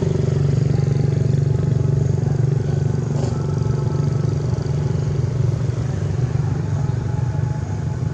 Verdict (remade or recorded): recorded